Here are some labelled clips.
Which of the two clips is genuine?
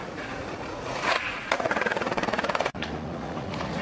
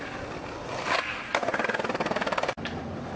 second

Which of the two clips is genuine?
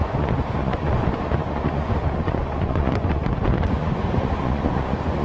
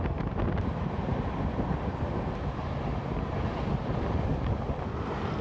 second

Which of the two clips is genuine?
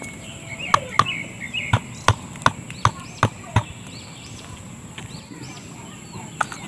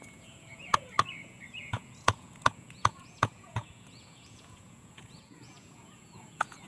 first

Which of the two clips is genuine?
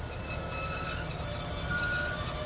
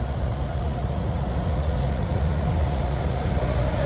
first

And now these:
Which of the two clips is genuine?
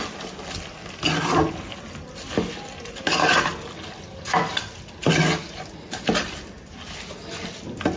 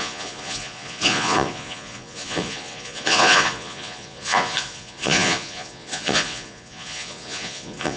first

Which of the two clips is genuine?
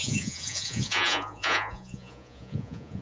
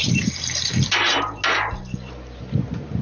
second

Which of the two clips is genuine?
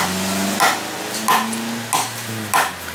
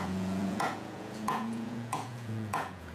first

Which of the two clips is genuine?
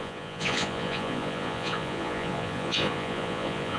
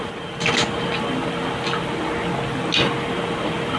second